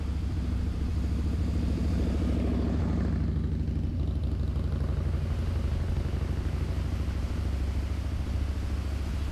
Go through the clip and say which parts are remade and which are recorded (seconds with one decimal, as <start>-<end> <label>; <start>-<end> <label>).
0.0-9.3 recorded